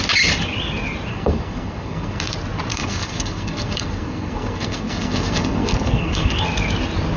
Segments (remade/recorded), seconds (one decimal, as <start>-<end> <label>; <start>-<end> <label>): 0.0-1.1 recorded; 1.1-2.2 remade; 2.2-2.7 recorded; 2.7-6.4 remade; 6.4-7.2 recorded